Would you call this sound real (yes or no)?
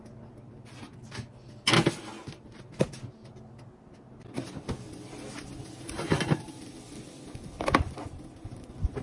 yes